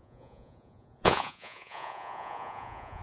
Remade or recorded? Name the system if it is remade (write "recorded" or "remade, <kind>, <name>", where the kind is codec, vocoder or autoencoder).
remade, vocoder, Vocos